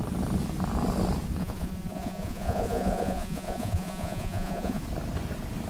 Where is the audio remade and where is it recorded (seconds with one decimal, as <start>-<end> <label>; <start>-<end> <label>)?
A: 0.0-1.4 recorded; 1.4-4.8 remade; 4.8-5.7 recorded